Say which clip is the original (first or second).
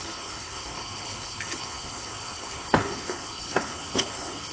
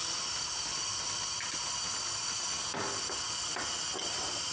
second